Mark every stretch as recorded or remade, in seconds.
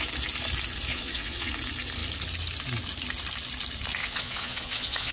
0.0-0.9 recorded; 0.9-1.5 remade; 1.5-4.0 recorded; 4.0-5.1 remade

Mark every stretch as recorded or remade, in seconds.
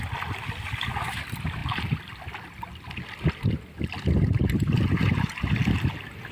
0.0-6.3 recorded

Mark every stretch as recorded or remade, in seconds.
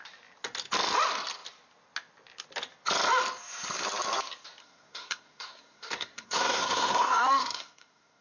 0.0-4.6 recorded; 4.6-8.2 remade